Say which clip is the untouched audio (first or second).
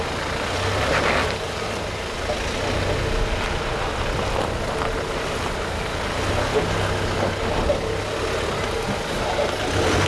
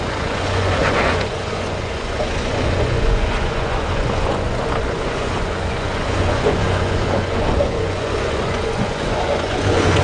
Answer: first